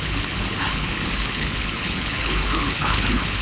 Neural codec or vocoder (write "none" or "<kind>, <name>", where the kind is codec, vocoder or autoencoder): codec, HILCodec